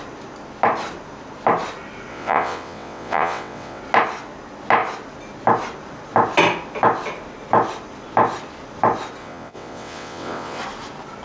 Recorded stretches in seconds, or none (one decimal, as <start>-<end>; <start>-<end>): 0.0-2.1; 3.8-9.2; 10.6-11.2